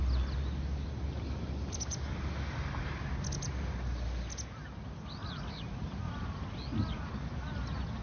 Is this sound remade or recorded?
recorded